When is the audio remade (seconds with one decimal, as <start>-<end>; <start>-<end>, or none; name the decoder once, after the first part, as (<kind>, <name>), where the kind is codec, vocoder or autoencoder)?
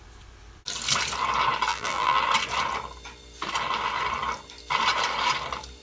1.7-2.2 (vocoder, BigVGAN v2)